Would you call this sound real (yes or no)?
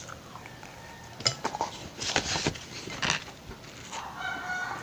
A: yes